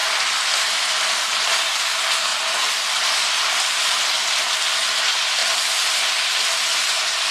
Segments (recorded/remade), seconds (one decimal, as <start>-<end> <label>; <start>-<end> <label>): 0.0-2.3 recorded; 2.3-4.0 remade; 4.0-5.4 recorded; 5.4-6.1 remade; 6.1-7.3 recorded